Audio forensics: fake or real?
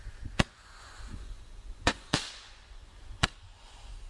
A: fake